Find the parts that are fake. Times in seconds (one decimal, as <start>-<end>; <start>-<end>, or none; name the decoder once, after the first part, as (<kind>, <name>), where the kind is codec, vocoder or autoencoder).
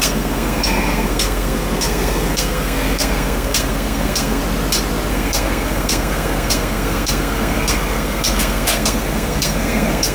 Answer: 0.0-4.4 (codec, SNAC); 5.1-10.1